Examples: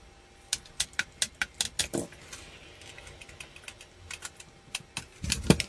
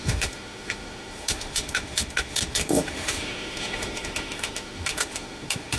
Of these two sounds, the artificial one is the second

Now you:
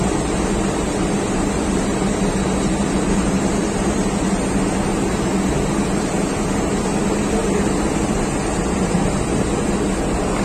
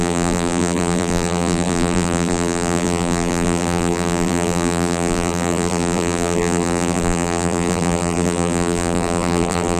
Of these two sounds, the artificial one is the second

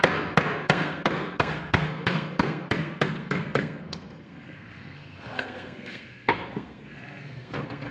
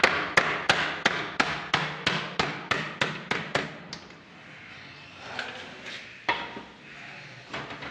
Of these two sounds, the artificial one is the first